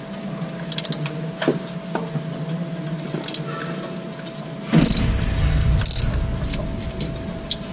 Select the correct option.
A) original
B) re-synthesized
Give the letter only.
A